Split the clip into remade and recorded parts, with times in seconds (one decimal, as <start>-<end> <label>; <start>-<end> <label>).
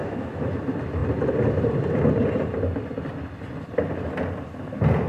0.0-0.6 remade; 0.6-5.1 recorded